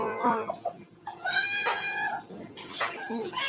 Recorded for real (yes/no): yes